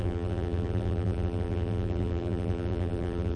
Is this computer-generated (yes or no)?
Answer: yes